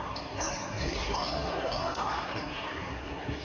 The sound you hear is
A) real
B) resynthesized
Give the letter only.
B